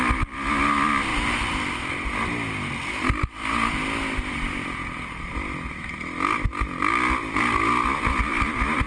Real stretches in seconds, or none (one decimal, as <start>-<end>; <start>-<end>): 0.0-8.9